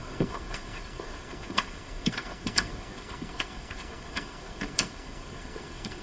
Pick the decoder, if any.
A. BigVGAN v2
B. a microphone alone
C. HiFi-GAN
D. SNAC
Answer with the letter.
D